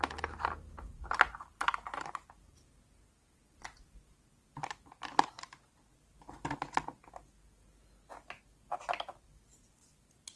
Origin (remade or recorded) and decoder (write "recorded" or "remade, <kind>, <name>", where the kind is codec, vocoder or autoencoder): recorded